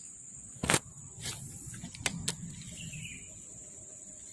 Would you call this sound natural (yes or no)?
yes